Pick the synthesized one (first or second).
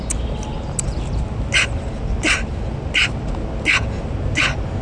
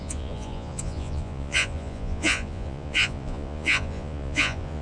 second